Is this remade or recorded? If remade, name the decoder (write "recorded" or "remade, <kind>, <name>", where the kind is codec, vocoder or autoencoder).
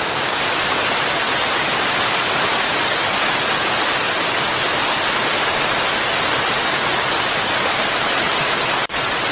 recorded